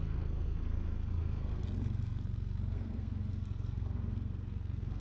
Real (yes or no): no